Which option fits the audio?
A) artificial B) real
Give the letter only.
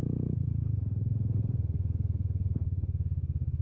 B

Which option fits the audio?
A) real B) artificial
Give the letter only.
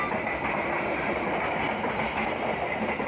A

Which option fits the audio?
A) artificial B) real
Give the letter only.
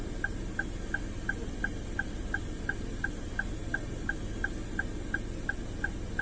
B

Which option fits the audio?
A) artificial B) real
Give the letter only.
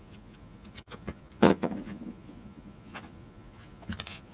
A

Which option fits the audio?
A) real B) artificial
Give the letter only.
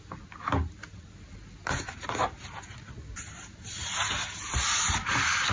A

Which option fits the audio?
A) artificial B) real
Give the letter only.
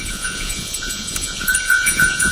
A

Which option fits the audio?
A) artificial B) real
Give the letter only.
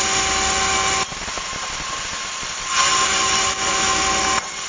B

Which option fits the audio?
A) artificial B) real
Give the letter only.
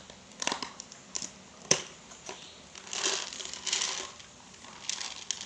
B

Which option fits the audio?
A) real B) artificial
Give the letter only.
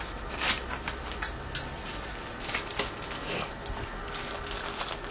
A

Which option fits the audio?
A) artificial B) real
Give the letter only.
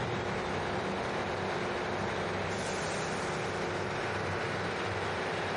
B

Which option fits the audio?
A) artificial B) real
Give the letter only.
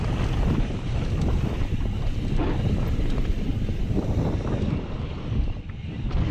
B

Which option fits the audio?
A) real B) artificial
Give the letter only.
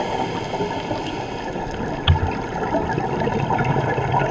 A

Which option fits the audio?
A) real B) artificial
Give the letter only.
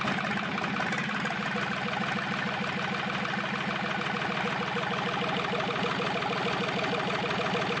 A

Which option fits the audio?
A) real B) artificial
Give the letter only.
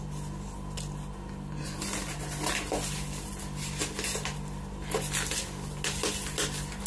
A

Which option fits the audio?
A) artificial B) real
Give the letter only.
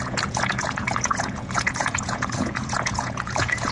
A